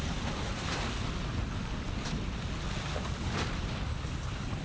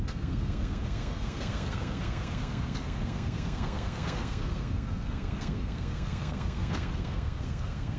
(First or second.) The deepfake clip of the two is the second